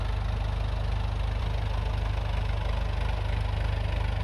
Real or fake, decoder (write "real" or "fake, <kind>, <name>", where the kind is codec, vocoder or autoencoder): real